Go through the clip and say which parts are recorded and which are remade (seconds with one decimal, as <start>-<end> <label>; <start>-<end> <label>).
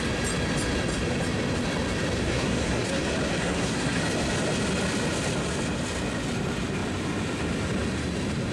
0.0-2.2 recorded; 2.2-3.0 remade; 3.0-3.4 recorded; 3.4-4.0 remade; 4.0-8.5 recorded